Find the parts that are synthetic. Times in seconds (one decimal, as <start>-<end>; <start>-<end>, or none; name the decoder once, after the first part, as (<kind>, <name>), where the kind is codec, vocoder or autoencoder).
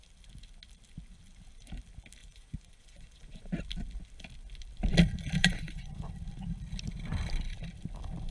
2.2-3.5 (vocoder, Vocos); 5.4-6.1